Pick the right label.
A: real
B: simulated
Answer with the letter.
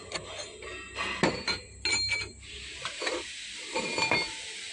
A